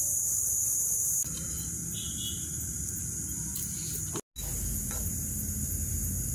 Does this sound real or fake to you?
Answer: real